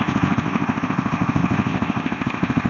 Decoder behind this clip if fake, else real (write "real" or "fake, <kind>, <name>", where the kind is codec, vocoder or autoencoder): fake, codec, ZipCodec